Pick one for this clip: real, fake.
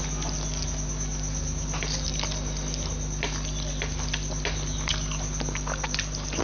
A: real